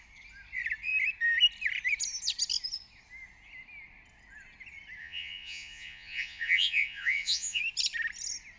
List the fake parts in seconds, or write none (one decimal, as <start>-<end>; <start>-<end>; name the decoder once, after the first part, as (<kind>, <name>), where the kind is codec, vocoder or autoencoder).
5.0-7.6 (vocoder, Vocos)